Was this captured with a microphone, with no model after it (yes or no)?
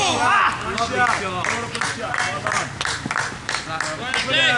yes